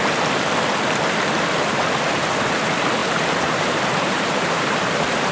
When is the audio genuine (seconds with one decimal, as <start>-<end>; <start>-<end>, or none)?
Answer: 0.0-3.0